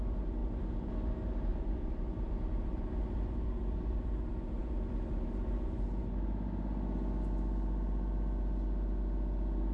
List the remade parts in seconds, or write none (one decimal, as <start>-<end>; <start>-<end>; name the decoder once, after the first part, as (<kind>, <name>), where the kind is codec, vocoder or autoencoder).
1.5-4.0 (vocoder, BigVGAN v2); 4.6-6.0